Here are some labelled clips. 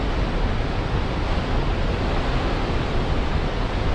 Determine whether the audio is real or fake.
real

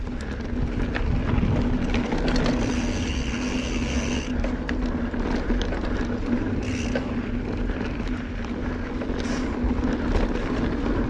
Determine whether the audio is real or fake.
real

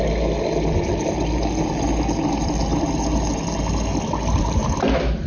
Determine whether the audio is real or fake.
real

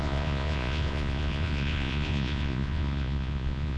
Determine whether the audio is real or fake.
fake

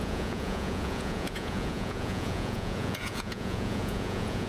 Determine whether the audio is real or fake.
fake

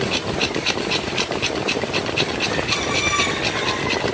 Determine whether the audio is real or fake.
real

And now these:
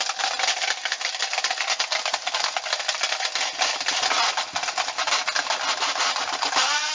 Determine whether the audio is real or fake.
real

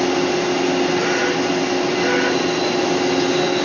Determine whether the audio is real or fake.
real